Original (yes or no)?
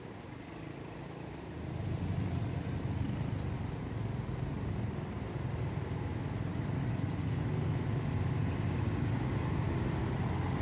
yes